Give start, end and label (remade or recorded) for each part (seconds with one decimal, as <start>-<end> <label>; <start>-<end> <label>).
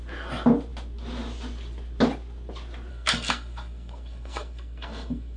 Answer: 0.0-2.9 recorded; 2.9-5.4 remade